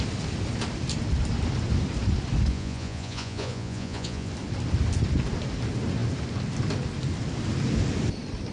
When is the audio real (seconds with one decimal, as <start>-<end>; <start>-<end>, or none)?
0.0-2.5; 4.3-8.5